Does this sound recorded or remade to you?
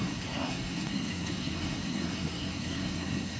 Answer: remade